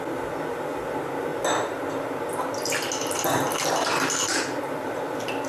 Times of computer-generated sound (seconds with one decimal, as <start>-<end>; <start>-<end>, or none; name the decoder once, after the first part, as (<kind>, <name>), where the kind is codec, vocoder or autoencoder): none